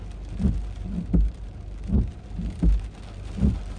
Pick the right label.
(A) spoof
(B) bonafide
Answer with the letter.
B